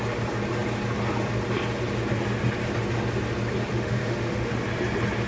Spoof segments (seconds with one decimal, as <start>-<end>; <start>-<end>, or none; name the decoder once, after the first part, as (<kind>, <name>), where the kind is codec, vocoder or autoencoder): 3.7-4.5 (autoencoder, DAC-VAE)